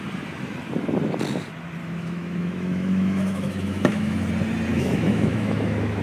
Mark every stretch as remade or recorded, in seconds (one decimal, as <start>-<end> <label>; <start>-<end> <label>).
0.0-1.8 recorded; 1.8-4.2 remade; 4.2-4.7 recorded; 4.7-6.0 remade

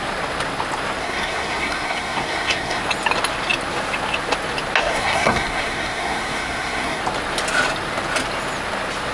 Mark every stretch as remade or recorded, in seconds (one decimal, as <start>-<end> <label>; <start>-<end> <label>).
0.0-1.0 recorded; 1.0-2.8 remade; 2.8-4.9 recorded; 4.9-7.0 remade; 7.0-9.1 recorded